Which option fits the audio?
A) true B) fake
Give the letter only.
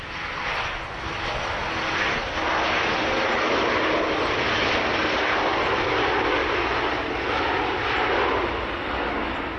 A